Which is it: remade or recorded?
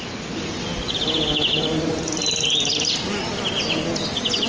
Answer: recorded